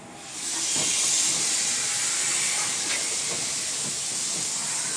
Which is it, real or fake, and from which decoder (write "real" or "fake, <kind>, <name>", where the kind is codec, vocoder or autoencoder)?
real